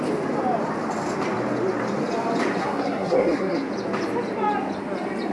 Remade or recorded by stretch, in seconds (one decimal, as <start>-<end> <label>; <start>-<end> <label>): 0.0-2.6 recorded; 2.6-3.7 remade; 3.7-5.3 recorded